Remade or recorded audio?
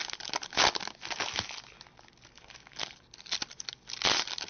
recorded